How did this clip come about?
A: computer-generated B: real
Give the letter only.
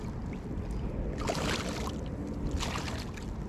B